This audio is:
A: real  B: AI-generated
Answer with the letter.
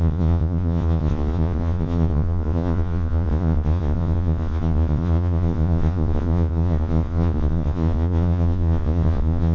B